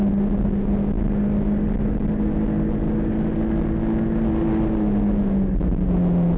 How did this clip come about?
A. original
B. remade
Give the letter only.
A